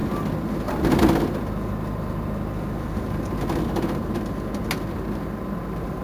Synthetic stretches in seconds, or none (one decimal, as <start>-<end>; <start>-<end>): none

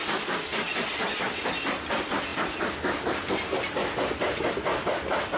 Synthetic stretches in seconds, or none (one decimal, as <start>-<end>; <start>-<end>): none

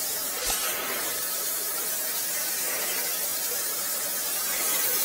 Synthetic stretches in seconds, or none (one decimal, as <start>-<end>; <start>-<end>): 0.7-2.9; 3.3-3.8

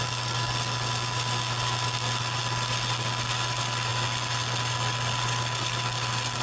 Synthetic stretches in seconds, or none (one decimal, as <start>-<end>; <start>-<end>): none

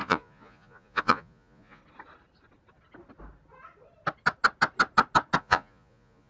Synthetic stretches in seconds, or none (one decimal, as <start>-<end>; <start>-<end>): 0.0-1.8; 5.4-6.3

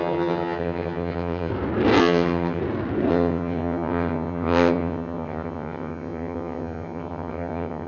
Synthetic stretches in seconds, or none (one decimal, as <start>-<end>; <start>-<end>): 0.0-1.5; 2.0-2.6; 3.1-7.9

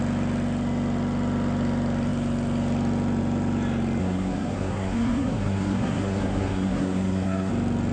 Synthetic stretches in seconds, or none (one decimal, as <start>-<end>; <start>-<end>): 4.0-7.5

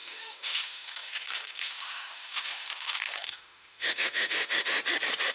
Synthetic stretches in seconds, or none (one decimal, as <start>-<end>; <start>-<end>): 0.0-4.8